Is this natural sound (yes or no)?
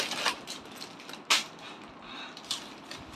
yes